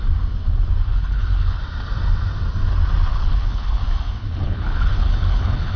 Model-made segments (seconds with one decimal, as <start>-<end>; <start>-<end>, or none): 0.9-1.6; 3.1-3.8; 4.2-5.8